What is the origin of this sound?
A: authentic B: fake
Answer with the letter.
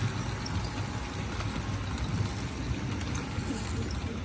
A